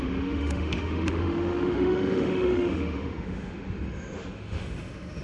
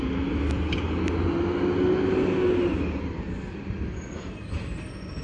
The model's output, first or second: first